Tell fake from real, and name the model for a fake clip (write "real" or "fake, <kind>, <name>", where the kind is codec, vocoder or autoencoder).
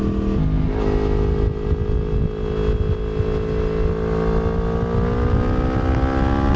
real